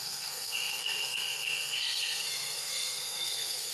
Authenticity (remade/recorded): remade